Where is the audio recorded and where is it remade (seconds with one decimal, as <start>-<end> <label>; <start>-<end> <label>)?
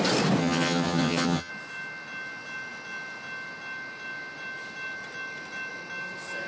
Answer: 0.0-0.4 recorded; 0.4-1.5 remade; 1.5-6.5 recorded